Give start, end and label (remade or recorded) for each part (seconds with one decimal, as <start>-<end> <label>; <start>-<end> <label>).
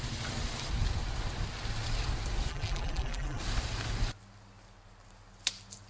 0.0-2.5 recorded; 2.5-3.4 remade; 3.4-5.9 recorded